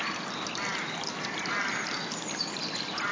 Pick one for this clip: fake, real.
real